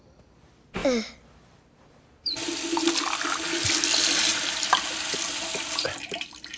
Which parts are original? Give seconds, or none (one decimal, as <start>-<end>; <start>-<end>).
0.0-0.8; 3.0-4.3